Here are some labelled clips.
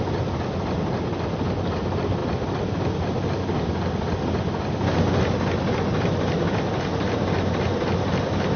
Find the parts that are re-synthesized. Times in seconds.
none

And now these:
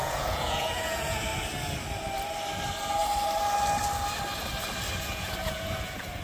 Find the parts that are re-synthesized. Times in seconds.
0.0-1.3 (vocoder, Vocos); 5.0-6.2

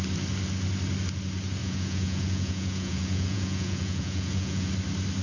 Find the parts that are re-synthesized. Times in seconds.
1.6-4.7 (vocoder, Vocos)

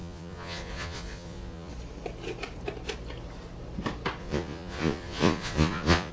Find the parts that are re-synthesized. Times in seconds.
0.0-1.7 (vocoder, Vocos); 4.2-6.1

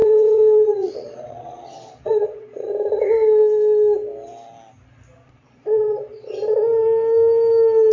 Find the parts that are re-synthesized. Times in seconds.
0.0-2.7 (vocoder, Vocos); 5.2-6.3

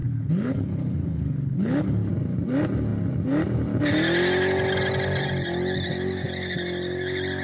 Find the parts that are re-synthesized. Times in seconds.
0.0-2.1 (codec, HILCodec)

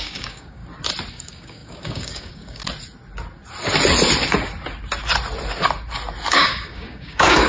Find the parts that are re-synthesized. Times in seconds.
0.0-0.6 (codec, DAC); 1.1-2.6; 6.3-7.5

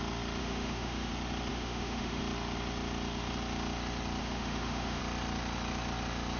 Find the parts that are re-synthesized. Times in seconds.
0.4-1.1 (autoencoder, DAC-VAE); 1.5-2.2; 4.2-5.0